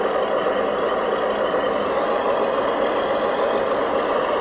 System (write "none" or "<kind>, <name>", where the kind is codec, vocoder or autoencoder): none